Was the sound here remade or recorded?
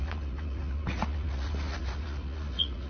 remade